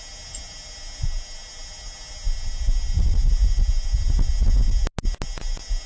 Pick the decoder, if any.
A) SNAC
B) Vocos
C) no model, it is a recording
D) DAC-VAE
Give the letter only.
C